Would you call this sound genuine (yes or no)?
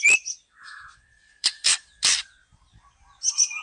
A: no